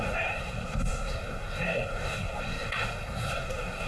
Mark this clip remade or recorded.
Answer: remade